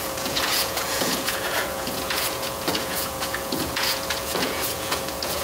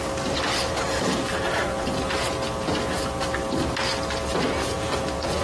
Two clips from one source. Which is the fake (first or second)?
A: first